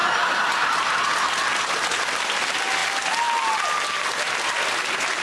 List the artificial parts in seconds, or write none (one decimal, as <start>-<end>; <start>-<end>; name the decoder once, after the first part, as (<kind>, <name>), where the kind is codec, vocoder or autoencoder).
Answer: none